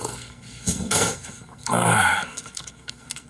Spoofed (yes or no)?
yes